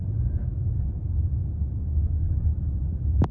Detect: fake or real real